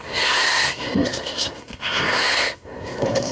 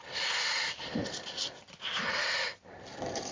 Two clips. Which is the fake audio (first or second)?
first